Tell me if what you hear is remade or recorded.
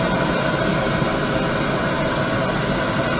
recorded